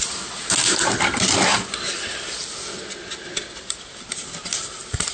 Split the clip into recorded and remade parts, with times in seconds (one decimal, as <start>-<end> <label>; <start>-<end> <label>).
0.0-5.1 recorded